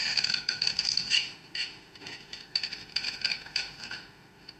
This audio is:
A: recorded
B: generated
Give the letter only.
B